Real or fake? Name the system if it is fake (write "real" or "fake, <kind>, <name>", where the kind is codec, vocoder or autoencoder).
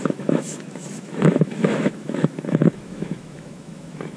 fake, autoencoder, DAC-VAE